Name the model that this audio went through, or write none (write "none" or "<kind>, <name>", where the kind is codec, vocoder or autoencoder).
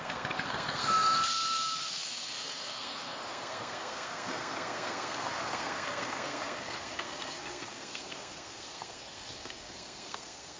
codec, SNAC